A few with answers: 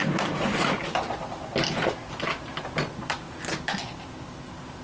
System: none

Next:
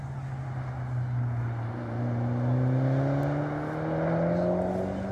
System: none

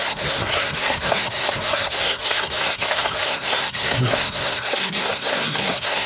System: codec, SNAC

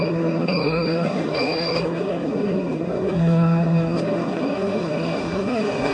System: codec, SNAC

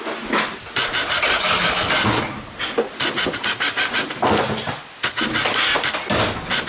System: none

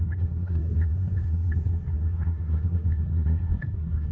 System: codec, SNAC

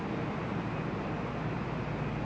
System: none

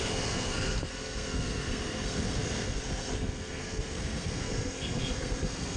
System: codec, SNAC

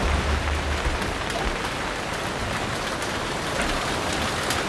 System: none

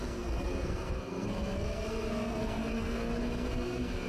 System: codec, SNAC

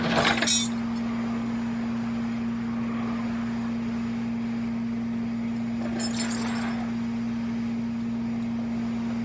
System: none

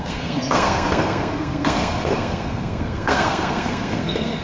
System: codec, SNAC